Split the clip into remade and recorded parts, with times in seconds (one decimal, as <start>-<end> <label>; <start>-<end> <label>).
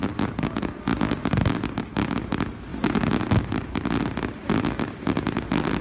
0.0-5.8 recorded